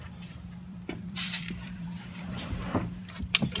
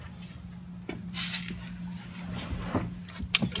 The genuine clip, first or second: second